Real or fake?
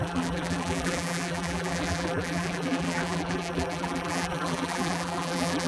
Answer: fake